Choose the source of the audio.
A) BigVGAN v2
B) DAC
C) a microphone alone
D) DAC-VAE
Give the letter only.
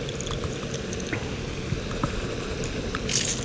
C